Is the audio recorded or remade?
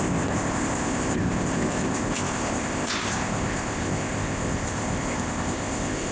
remade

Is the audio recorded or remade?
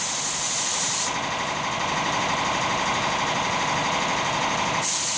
recorded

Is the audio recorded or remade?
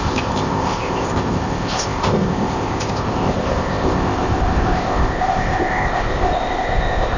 remade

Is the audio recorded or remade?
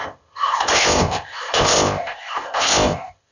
remade